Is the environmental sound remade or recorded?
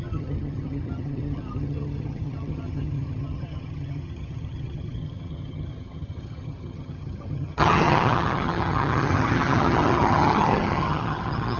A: remade